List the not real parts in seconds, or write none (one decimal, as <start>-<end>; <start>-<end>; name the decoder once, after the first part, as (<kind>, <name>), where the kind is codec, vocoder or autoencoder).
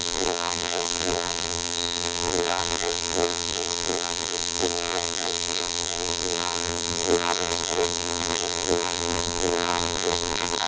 0.0-10.7 (vocoder, BigVGAN v2)